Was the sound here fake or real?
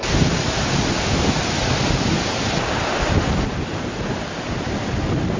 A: real